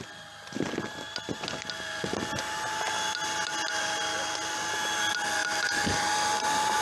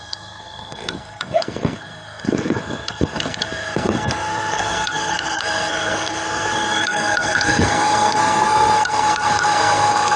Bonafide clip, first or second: first